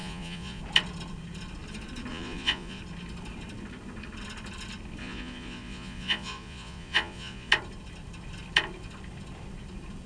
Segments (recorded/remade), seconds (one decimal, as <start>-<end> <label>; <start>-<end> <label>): 0.0-0.6 remade; 0.6-2.1 recorded; 2.1-2.8 remade; 2.8-5.0 recorded; 5.0-7.5 remade; 7.5-10.1 recorded